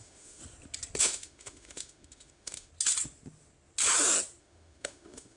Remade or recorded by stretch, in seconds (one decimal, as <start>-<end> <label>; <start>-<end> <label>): 0.0-0.4 remade; 0.4-1.0 recorded; 1.0-2.7 remade; 2.7-4.4 recorded; 4.4-5.4 remade